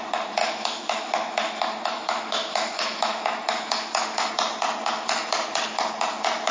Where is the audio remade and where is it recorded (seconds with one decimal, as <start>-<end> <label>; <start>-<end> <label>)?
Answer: 0.0-0.4 recorded; 0.4-4.3 remade; 4.3-6.5 recorded